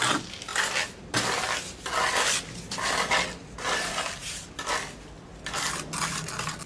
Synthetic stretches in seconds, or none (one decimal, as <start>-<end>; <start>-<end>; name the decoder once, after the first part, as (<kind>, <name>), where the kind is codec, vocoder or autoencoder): none